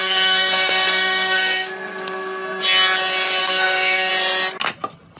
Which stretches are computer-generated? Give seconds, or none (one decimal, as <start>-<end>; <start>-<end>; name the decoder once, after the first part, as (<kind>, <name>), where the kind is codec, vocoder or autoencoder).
0.0-2.6 (codec, SNAC); 3.4-4.1